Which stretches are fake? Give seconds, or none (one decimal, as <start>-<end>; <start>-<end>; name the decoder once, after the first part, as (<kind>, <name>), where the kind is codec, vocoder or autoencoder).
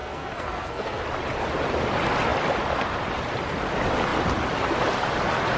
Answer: 0.0-1.0 (codec, SNAC)